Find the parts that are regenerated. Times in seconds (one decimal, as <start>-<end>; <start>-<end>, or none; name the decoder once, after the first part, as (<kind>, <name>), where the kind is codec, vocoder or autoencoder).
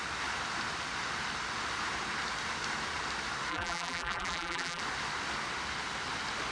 3.5-4.8 (vocoder, BigVGAN v2)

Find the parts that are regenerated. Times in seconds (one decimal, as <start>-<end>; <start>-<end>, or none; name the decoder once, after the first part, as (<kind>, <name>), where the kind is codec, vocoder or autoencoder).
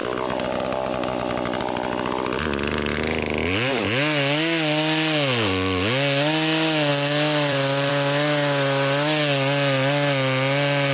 0.0-1.6 (vocoder, BigVGAN v2); 6.9-7.9